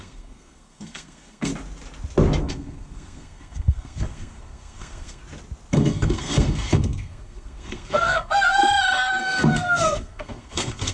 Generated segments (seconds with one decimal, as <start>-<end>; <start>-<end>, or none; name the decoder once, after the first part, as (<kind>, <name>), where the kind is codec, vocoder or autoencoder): 0.0-1.5 (codec, SNAC); 2.4-5.2; 5.7-8.6; 9.2-10.9

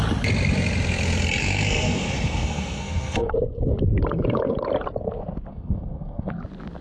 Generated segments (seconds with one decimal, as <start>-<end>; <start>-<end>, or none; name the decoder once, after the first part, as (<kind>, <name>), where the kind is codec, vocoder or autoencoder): 1.4-3.3 (codec, SNAC); 5.5-6.3

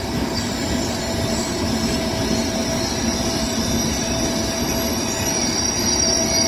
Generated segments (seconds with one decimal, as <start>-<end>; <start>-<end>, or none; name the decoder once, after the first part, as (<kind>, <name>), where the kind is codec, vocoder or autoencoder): none

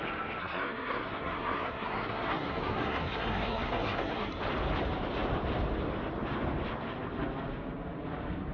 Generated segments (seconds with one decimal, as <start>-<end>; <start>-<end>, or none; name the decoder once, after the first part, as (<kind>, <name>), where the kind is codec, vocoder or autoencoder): 0.4-4.4 (codec, SNAC)

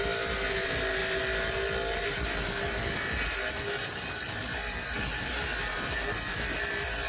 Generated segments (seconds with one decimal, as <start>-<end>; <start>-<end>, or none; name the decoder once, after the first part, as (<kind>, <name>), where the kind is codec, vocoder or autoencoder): none